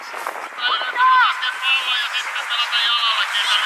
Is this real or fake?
real